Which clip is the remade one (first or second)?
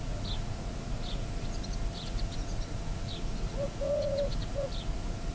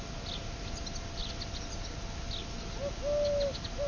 first